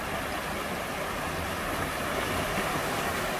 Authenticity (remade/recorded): recorded